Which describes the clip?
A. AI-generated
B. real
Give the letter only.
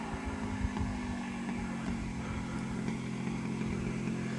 B